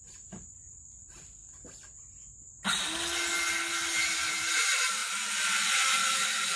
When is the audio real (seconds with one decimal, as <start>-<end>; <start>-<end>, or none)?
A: 1.4-4.3